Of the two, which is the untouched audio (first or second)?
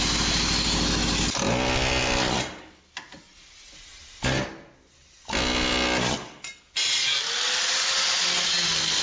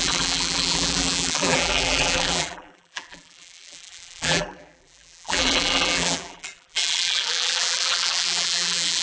first